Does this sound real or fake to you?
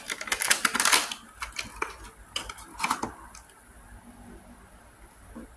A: real